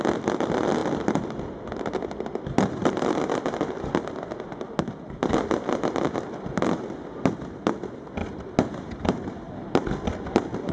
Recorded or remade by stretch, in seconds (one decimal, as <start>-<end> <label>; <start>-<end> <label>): 0.0-0.8 recorded; 0.8-2.4 remade; 2.4-2.8 recorded; 2.8-4.1 remade; 4.1-10.7 recorded

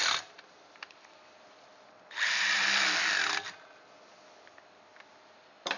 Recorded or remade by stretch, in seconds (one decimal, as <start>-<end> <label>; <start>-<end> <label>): 0.0-1.7 remade; 1.7-5.1 recorded; 5.1-5.8 remade

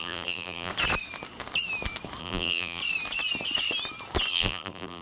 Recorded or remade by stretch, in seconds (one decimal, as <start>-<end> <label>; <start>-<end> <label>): 0.0-0.7 remade; 0.7-2.2 recorded; 2.2-2.8 remade; 2.8-4.3 recorded; 4.3-5.0 remade